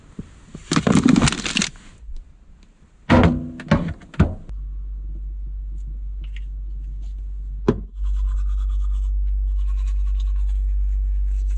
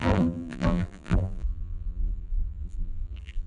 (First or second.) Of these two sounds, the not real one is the second